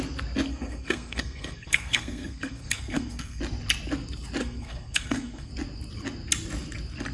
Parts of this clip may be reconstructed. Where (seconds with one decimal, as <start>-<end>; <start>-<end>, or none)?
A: 0.5-3.4; 4.4-5.5